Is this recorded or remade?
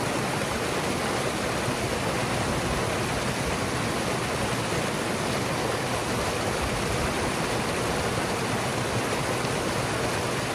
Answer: recorded